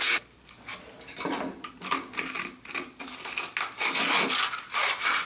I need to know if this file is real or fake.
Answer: real